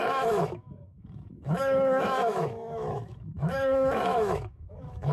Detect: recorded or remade remade